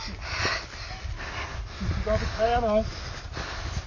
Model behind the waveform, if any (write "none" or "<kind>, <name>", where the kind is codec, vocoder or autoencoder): none